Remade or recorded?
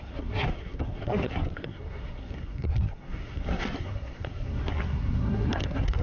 remade